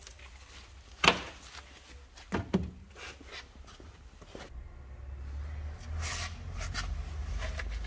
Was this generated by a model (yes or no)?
no